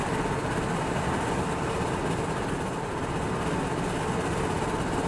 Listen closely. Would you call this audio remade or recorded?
recorded